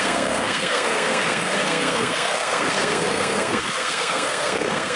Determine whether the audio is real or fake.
fake